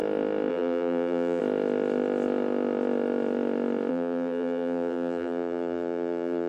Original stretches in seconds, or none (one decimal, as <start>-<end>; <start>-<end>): 0.0-0.5; 1.4-3.9